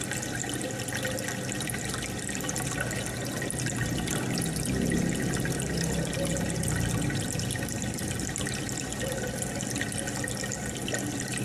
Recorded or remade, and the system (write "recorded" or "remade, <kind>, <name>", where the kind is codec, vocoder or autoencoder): recorded